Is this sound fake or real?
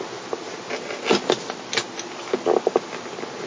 real